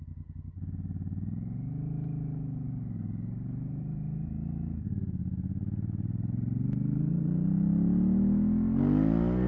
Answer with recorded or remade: recorded